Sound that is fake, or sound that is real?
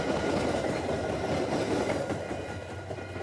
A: real